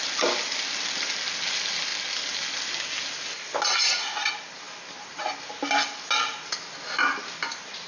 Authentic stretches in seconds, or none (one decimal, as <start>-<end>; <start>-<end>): 0.0-7.9

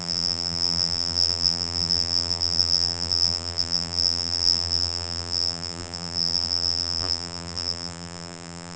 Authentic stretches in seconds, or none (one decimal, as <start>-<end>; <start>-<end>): none

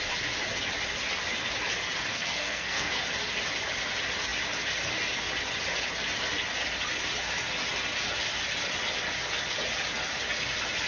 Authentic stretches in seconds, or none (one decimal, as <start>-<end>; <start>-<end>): 0.0-2.1; 3.0-10.9